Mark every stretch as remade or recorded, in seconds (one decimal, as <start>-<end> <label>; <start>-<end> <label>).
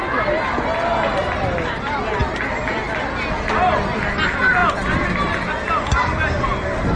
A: 0.0-7.0 recorded